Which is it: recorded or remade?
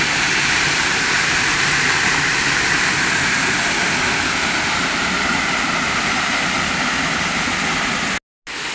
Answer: recorded